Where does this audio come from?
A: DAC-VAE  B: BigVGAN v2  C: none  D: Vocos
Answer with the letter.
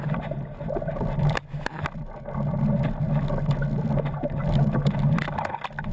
C